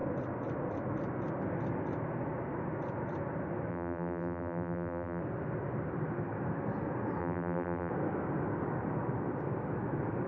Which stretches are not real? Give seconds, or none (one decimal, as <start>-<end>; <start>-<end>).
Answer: 3.7-5.2; 7.2-7.9